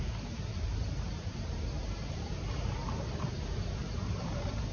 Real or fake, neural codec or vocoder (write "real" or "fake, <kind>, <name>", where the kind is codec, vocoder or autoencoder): fake, vocoder, BigVGAN v2